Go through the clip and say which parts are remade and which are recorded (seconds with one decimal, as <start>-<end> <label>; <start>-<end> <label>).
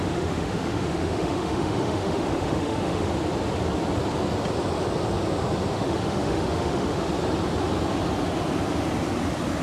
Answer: 0.0-3.1 remade; 3.1-5.7 recorded; 5.7-7.1 remade; 7.1-9.6 recorded